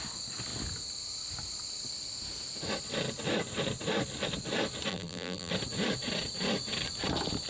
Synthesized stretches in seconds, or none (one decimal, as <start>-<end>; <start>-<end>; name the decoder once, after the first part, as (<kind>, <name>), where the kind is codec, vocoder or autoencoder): 4.9-5.5 (vocoder, BigVGAN v2)